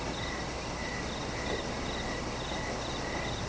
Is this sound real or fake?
real